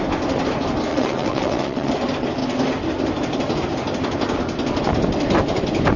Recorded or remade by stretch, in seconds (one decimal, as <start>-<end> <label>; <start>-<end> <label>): 0.0-0.9 recorded; 0.9-1.9 remade; 1.9-6.0 recorded